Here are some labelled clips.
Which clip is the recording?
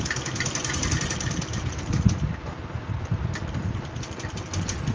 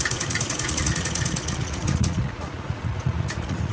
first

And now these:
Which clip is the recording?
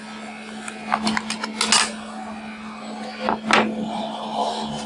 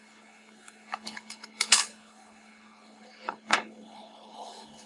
first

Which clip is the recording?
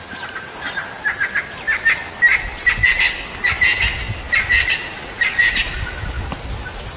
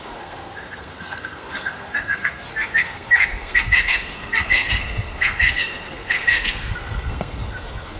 first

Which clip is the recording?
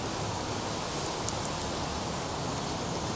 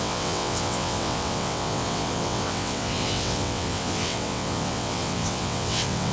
first